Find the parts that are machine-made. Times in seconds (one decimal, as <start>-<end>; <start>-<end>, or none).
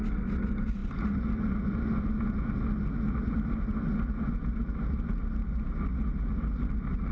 none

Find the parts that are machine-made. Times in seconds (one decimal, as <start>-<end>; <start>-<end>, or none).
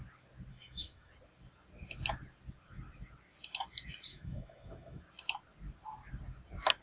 0.5-1.1; 4.1-5.0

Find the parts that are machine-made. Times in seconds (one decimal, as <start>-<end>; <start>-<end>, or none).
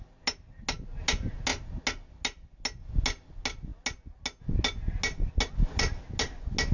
none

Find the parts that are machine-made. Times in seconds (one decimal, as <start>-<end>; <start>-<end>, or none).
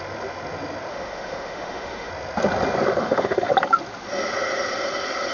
0.9-2.1; 2.9-3.5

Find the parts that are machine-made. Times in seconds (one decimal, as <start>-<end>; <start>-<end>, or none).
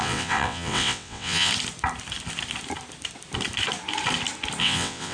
0.0-1.5; 4.6-5.1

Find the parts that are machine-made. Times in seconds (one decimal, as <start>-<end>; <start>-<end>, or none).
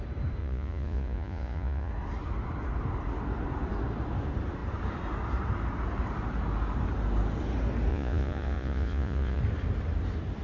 0.4-1.9; 7.9-9.4